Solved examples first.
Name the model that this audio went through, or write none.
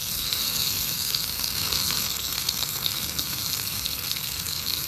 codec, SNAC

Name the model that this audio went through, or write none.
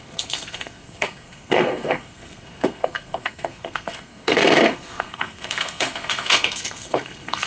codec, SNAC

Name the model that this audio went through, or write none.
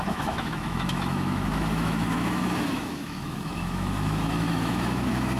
autoencoder, DAC-VAE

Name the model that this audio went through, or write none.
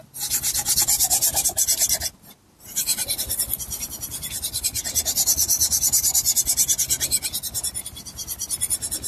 none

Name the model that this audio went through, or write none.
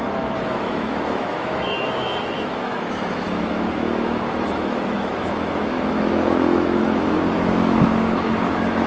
autoencoder, DAC-VAE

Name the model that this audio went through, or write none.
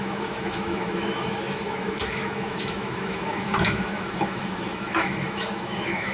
autoencoder, DAC-VAE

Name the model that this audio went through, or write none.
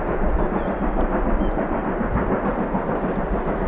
none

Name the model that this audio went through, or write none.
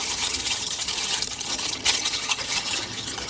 vocoder, HiFi-GAN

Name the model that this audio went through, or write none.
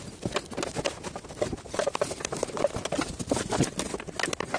none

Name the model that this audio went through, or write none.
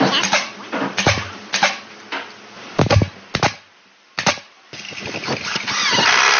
none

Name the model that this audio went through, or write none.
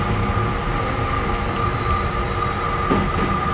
none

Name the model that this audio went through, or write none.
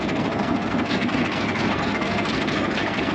codec, SNAC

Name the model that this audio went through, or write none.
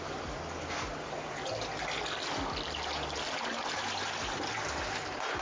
none